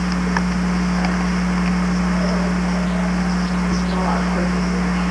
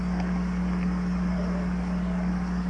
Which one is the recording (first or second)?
first